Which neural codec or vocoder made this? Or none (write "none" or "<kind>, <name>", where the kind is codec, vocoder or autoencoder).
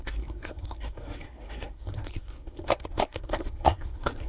codec, SNAC